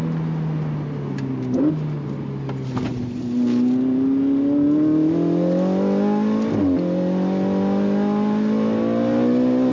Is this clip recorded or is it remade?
recorded